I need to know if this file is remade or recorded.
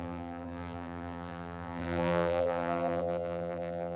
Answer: remade